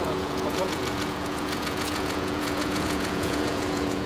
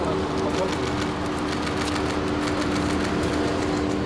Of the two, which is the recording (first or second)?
second